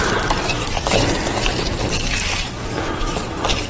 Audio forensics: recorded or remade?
remade